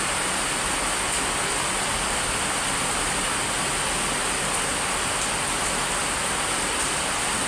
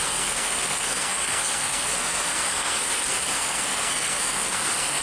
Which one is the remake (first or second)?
second